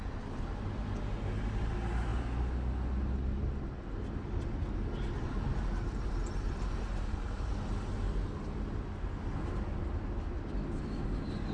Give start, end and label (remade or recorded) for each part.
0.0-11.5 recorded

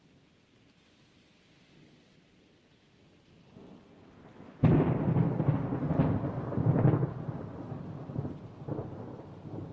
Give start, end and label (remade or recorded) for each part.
0.0-4.3 recorded; 4.3-4.9 remade; 4.9-9.7 recorded

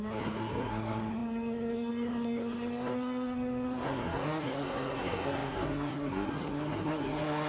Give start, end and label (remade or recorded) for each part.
0.0-7.5 remade

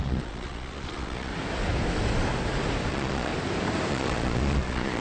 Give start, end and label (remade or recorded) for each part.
0.0-1.3 remade; 1.3-2.9 recorded; 2.9-3.3 remade; 3.3-3.9 recorded; 3.9-5.0 remade